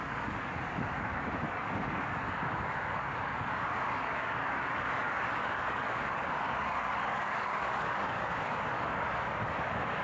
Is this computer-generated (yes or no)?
yes